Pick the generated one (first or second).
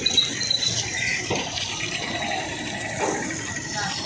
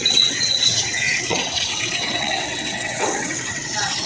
second